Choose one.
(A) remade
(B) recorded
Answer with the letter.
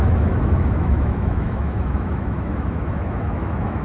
A